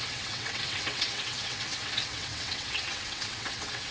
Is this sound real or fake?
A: fake